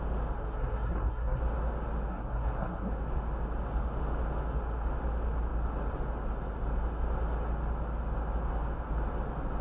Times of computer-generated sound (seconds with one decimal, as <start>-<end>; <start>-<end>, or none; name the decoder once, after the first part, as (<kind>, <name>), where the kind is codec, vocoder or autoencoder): 0.4-1.4 (codec, SNAC); 2.1-2.9